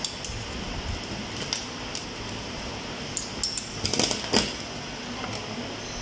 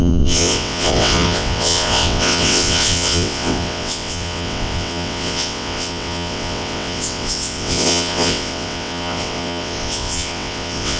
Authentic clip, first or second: first